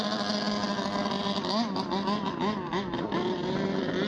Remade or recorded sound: recorded